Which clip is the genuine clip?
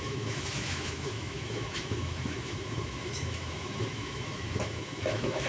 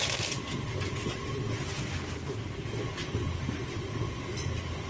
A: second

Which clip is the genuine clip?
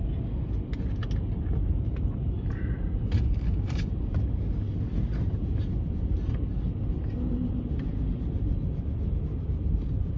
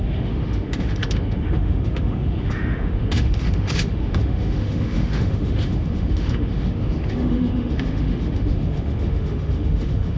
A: first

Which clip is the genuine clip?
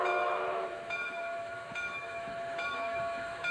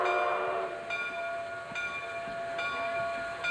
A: second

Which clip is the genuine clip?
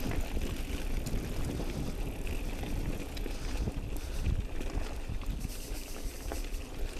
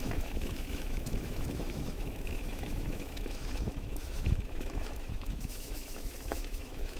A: first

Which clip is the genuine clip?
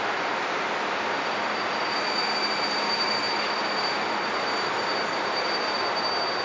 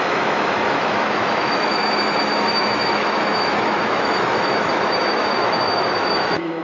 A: first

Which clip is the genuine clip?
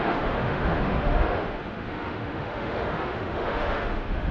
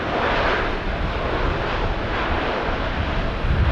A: second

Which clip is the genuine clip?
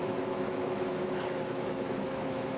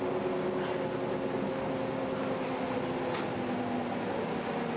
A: second